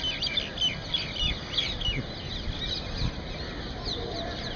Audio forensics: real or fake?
real